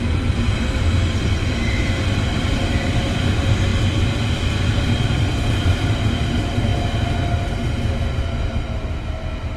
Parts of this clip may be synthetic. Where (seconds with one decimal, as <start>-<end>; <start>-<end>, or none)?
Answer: 0.0-3.7; 5.5-6.7; 8.9-9.6